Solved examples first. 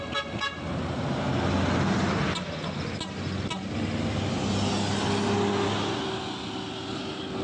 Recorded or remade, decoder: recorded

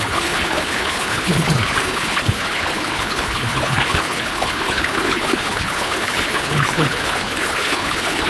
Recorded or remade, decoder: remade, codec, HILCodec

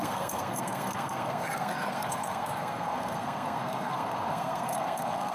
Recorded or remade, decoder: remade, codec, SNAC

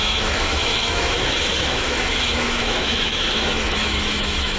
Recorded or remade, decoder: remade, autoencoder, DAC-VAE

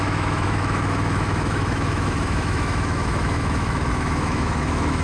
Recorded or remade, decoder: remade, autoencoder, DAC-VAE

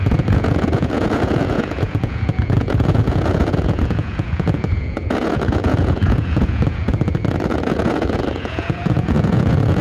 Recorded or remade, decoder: remade, vocoder, Vocos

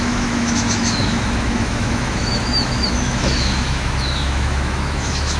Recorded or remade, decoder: remade, autoencoder, DAC-VAE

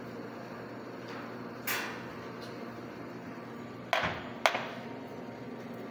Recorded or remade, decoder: recorded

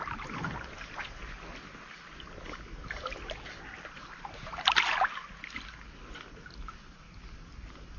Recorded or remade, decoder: recorded